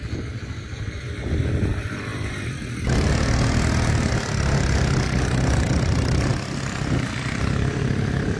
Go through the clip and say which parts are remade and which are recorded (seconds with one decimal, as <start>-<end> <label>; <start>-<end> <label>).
0.0-8.4 recorded

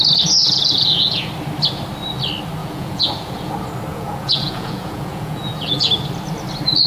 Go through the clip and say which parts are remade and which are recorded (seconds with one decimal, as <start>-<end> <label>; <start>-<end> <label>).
0.0-0.4 recorded; 0.4-1.3 remade; 1.3-2.6 recorded; 2.6-3.5 remade; 3.5-3.9 recorded; 3.9-5.9 remade; 5.9-6.9 recorded

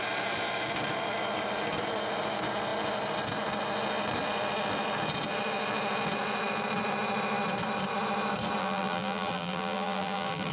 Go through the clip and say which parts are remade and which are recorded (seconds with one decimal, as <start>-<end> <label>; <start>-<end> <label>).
0.0-8.6 recorded; 8.6-10.5 remade

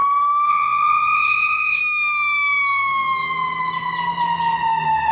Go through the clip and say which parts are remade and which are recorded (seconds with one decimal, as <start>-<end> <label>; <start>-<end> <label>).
0.0-0.5 recorded; 0.5-1.8 remade; 1.8-5.1 recorded

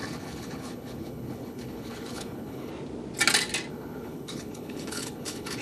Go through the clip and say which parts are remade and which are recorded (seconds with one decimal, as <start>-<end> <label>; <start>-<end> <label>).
0.0-2.7 remade; 2.7-3.7 recorded; 3.7-5.6 remade

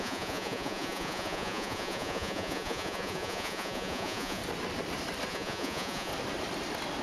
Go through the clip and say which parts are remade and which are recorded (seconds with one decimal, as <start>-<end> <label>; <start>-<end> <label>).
0.0-4.4 remade; 4.4-5.3 recorded; 5.3-6.1 remade; 6.1-7.0 recorded